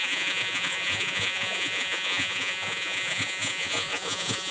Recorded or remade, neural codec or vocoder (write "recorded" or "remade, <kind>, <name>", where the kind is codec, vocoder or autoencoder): remade, vocoder, Vocos